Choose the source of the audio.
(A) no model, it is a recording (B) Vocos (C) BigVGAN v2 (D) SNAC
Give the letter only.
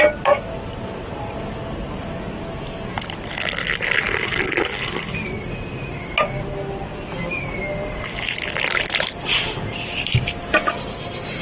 A